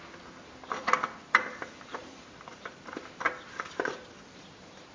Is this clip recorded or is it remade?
recorded